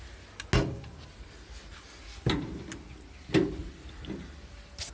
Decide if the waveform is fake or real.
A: real